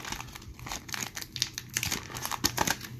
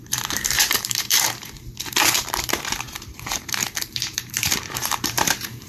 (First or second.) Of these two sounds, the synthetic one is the second